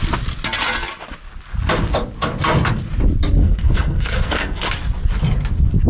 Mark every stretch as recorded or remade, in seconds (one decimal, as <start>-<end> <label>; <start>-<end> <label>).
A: 0.0-3.4 recorded; 3.4-4.7 remade; 4.7-5.9 recorded